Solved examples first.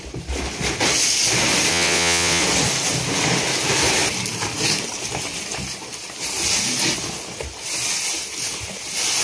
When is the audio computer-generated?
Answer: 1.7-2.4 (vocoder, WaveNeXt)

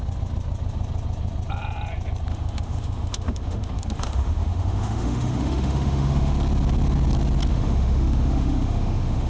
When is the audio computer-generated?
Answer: 2.3-6.3 (autoencoder, DAC-VAE); 7.5-9.3

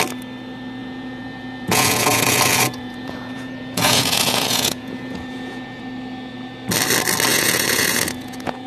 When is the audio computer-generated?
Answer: 0.8-5.8 (vocoder, Vocos); 7.3-8.7

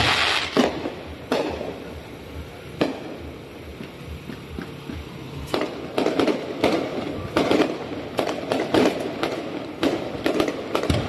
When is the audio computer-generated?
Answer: 3.7-5.6 (vocoder, BigVGAN v2)

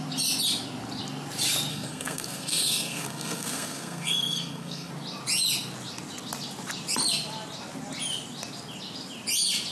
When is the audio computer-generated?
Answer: 1.7-4.9 (codec, SNAC)